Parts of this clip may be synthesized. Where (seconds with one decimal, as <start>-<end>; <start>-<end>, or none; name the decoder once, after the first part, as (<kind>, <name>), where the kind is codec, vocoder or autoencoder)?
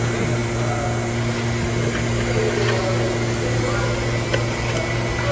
none